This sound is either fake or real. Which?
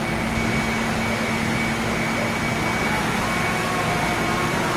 real